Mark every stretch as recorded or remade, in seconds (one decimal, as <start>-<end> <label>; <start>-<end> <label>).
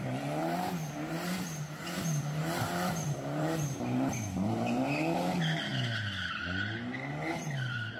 0.0-5.7 remade; 5.7-7.3 recorded; 7.3-8.0 remade